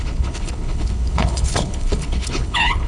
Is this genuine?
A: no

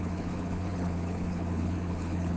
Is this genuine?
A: no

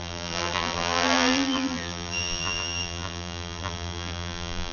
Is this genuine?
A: no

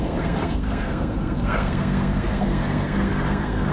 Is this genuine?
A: no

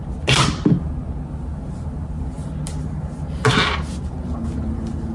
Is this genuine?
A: yes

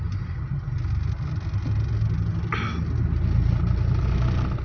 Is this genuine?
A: yes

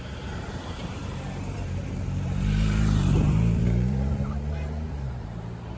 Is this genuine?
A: no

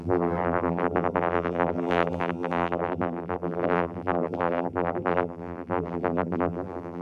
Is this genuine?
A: no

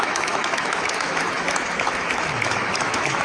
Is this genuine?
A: no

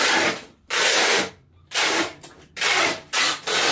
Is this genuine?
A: no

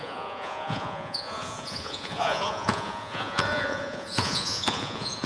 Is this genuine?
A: no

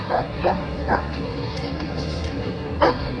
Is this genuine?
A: no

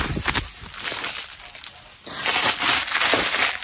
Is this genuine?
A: yes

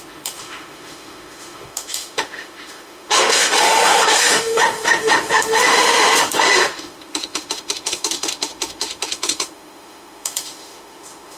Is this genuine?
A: no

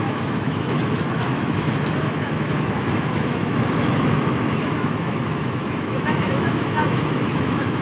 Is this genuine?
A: no